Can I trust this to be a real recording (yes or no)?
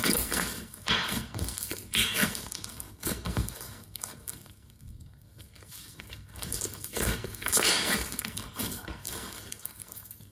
no